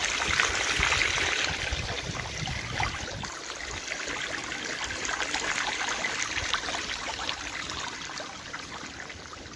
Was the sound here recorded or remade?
recorded